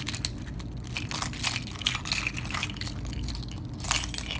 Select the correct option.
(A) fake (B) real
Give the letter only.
B